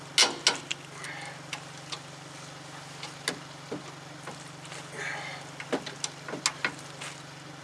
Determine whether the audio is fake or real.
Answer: real